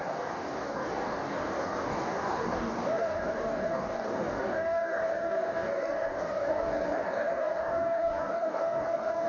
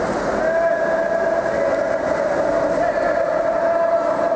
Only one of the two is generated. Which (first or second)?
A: first